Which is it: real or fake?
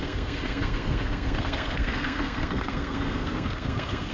fake